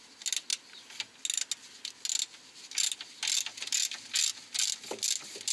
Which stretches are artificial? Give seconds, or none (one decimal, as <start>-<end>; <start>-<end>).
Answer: none